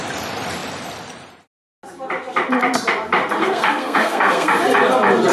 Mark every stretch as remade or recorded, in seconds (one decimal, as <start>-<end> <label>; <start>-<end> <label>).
0.0-3.4 recorded; 3.4-4.5 remade; 4.5-5.3 recorded